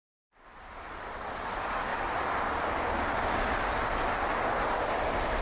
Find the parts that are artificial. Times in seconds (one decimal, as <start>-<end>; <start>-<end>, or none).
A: none